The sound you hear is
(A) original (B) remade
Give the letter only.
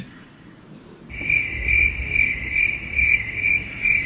A